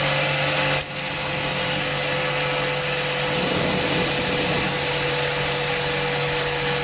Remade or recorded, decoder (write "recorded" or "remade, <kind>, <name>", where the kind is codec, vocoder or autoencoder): recorded